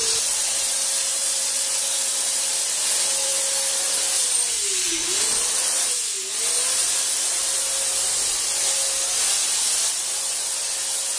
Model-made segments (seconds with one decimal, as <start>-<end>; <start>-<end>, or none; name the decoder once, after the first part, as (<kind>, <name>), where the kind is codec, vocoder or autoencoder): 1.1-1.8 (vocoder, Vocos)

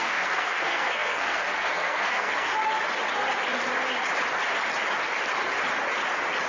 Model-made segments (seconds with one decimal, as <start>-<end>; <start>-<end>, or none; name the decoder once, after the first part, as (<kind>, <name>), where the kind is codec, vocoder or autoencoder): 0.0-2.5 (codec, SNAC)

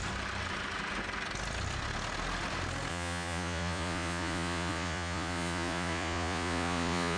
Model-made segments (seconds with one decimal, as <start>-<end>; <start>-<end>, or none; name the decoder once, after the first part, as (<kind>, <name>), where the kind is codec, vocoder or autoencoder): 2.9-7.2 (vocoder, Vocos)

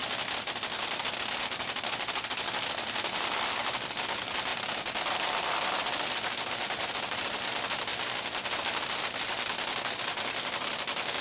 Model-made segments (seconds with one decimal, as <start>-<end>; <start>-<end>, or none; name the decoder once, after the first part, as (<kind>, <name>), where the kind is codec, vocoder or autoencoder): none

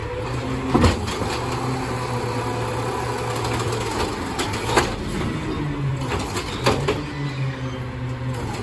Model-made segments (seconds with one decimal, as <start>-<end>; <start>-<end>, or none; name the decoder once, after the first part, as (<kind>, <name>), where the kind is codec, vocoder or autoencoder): none

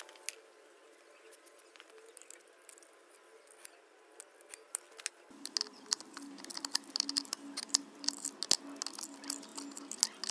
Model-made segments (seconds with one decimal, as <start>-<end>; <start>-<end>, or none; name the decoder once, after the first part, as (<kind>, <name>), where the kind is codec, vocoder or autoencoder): none

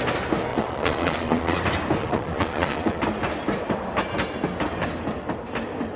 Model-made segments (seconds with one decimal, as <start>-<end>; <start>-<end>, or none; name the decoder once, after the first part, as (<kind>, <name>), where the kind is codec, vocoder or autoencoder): 0.5-1.6 (vocoder, Vocos); 2.0-3.0